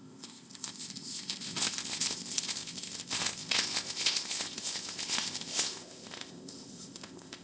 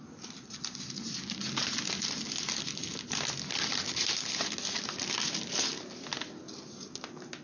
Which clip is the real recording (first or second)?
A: second